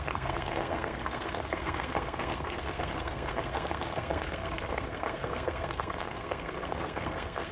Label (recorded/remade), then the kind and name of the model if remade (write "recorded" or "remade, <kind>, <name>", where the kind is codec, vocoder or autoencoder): remade, codec, SNAC